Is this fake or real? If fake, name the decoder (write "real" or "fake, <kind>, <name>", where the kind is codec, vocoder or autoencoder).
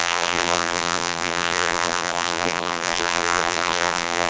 fake, vocoder, BigVGAN v2